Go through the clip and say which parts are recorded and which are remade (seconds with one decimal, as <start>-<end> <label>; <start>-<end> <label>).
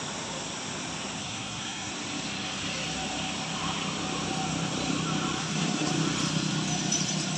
0.0-1.2 recorded; 1.2-1.9 remade; 1.9-5.4 recorded; 5.4-5.9 remade; 5.9-7.4 recorded